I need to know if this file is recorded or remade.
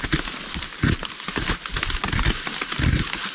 recorded